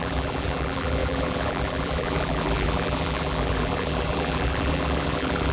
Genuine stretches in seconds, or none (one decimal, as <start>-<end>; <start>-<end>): none